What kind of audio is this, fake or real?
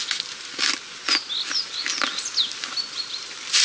real